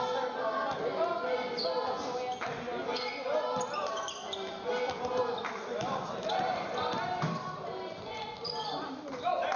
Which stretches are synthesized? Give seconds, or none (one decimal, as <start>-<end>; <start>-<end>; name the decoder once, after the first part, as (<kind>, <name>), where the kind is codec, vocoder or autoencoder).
none